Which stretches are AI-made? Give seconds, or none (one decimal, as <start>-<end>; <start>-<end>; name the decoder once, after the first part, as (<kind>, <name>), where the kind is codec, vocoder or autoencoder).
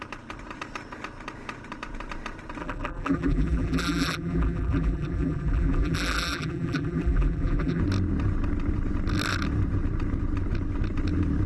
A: 2.6-7.8 (vocoder, BigVGAN v2)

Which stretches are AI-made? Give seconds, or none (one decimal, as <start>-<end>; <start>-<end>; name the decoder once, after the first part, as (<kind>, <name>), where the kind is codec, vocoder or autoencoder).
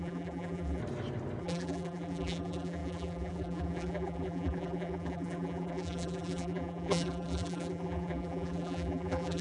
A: 0.0-0.8 (vocoder, BigVGAN v2); 1.4-9.4